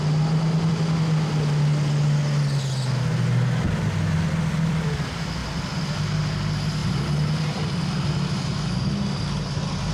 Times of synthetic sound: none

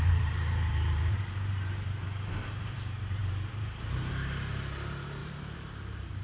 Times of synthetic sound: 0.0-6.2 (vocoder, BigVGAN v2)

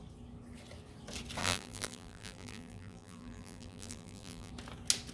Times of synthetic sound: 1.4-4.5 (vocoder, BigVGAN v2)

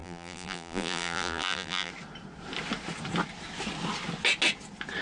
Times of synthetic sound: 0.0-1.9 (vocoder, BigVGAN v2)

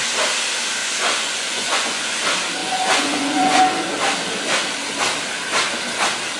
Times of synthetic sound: 0.8-2.2 (vocoder, Vocos); 2.6-3.6

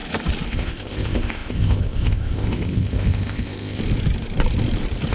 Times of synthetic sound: 0.5-3.8 (codec, ZipCodec)

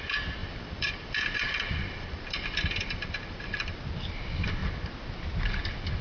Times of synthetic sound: 0.4-3.8 (vocoder, BigVGAN v2)

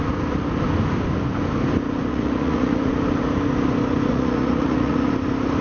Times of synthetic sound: 2.1-2.9 (vocoder, Vocos); 4.1-5.1